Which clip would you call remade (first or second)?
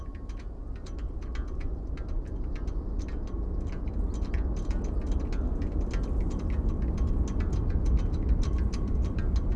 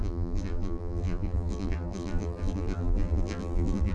second